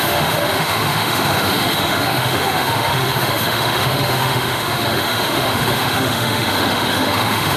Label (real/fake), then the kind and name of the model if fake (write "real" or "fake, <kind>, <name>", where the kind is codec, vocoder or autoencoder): fake, autoencoder, DAC-VAE